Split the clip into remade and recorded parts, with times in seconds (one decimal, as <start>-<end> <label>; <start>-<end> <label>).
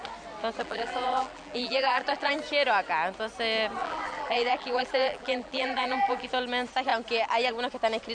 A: 0.0-0.6 recorded; 0.6-2.3 remade; 2.3-3.8 recorded; 3.8-6.3 remade; 6.3-8.1 recorded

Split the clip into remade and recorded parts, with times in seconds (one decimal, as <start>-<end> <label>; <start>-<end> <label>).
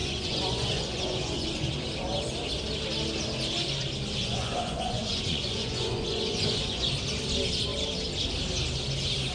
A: 0.0-1.7 remade; 1.7-4.2 recorded; 4.2-6.9 remade; 6.9-9.3 recorded